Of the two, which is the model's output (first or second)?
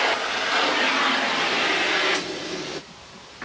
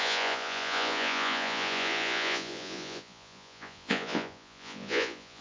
second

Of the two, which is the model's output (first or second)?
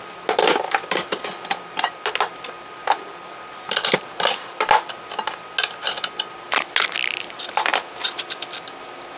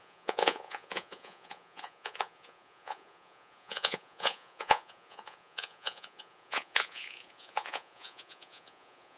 second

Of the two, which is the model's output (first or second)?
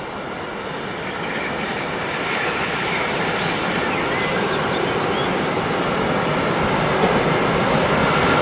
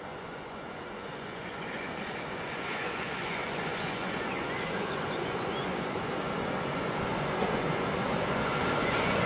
second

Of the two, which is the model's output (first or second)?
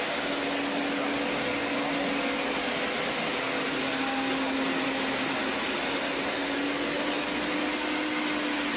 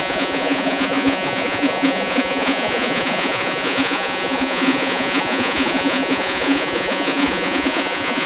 second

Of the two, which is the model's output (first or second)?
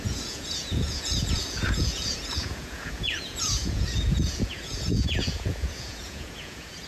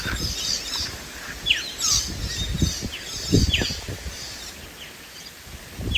first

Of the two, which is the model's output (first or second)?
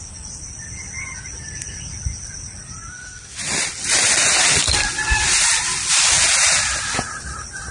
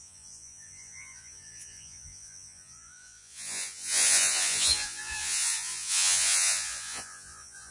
second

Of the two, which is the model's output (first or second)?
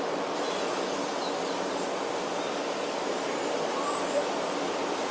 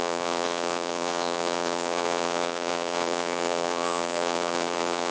second